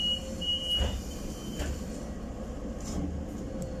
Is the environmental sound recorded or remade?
recorded